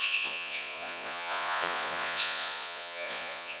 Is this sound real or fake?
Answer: fake